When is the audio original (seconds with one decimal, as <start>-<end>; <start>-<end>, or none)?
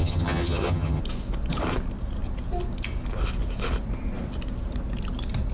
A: 1.0-5.5